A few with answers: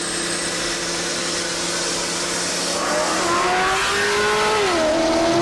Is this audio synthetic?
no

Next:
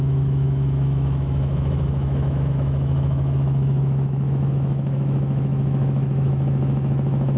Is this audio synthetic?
yes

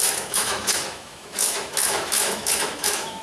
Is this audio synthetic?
yes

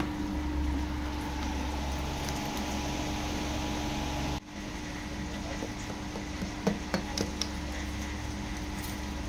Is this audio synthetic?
no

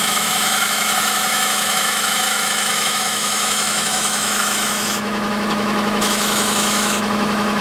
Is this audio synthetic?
yes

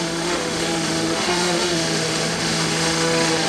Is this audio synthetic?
yes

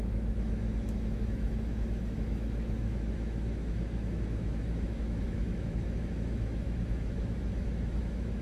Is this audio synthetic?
yes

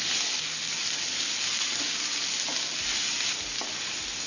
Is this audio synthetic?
no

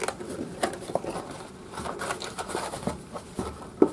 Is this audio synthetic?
no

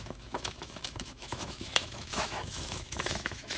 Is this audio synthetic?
yes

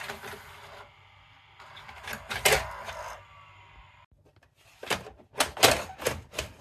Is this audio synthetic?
no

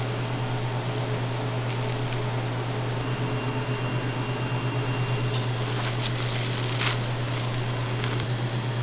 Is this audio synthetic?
no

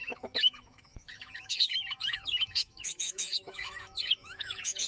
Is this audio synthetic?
yes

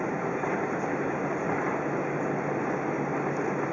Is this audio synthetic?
no